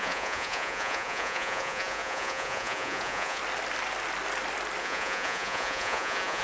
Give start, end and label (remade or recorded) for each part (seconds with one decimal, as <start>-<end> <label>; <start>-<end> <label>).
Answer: 0.0-3.4 remade; 3.4-4.8 recorded; 4.8-6.4 remade